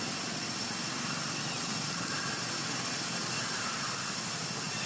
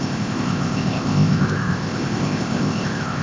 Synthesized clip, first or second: second